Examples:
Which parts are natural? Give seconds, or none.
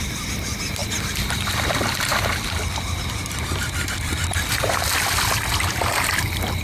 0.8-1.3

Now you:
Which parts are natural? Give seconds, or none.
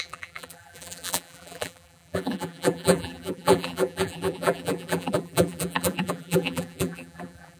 none